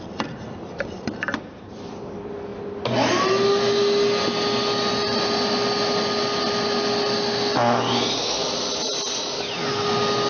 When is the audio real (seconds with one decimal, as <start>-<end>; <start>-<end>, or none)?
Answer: 0.0-10.3